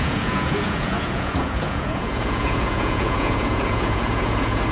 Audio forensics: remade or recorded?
remade